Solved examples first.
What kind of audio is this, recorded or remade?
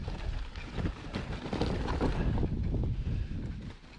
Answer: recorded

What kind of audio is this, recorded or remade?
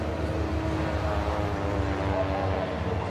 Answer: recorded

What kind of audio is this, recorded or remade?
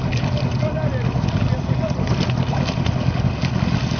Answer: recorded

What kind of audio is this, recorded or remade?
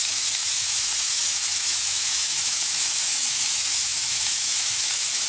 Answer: remade